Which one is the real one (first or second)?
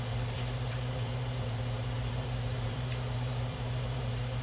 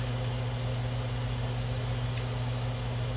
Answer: second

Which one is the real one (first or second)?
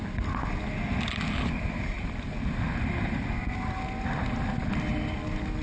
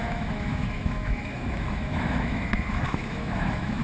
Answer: first